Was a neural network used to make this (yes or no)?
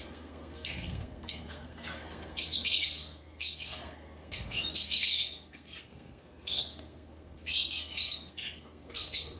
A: yes